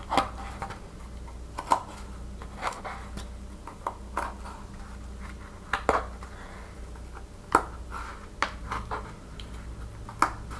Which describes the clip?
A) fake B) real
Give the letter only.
B